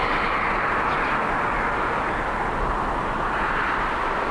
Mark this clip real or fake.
real